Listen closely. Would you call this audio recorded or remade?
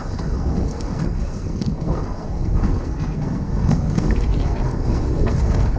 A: remade